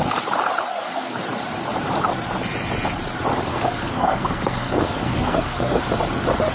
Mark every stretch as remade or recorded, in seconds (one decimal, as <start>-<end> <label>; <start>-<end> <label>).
0.0-0.7 recorded; 0.7-1.2 remade; 1.2-3.5 recorded; 3.5-5.8 remade; 5.8-6.5 recorded